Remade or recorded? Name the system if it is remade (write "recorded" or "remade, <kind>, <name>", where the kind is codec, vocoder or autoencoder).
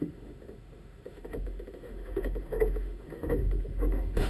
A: remade, autoencoder, DAC-VAE